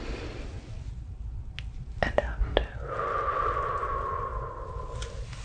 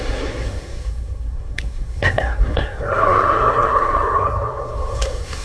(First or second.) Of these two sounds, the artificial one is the second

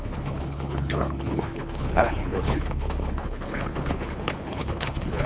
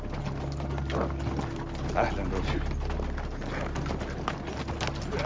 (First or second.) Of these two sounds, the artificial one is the first